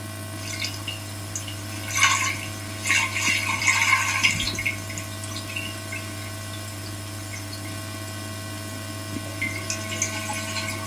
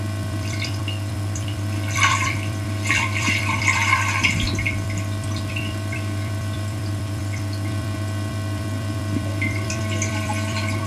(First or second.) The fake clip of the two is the second